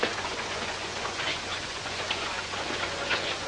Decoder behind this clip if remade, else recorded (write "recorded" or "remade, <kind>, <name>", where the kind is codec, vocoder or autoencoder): remade, vocoder, Vocos